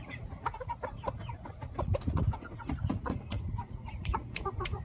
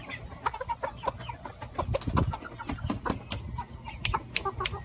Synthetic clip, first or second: first